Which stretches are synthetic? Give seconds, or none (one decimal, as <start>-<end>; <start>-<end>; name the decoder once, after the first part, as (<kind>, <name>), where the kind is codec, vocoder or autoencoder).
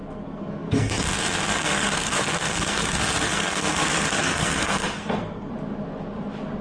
0.0-0.9 (codec, SNAC); 1.5-5.5